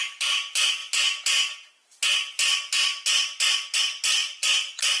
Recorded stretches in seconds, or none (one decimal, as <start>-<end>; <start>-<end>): 0.0-4.2